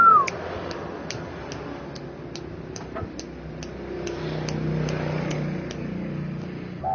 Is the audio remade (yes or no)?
no